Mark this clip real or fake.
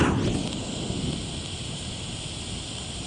real